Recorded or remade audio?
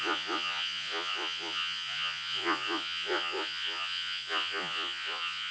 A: remade